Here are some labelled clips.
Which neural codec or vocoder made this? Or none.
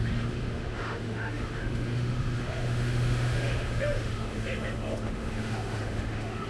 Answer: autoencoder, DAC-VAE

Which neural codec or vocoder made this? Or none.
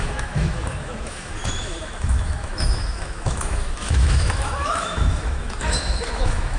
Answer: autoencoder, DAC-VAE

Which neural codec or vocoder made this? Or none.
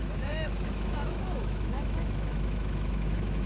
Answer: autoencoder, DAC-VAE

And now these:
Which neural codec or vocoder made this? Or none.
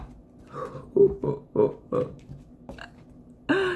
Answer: none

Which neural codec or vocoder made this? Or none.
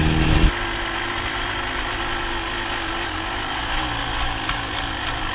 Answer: none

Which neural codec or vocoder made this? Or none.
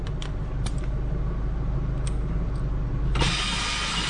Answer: none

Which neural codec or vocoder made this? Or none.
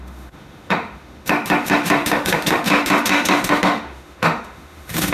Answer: autoencoder, DAC-VAE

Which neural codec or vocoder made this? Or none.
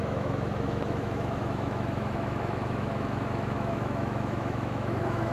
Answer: autoencoder, DAC-VAE